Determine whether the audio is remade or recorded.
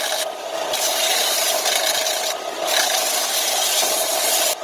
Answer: remade